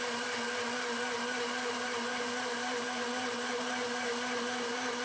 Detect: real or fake fake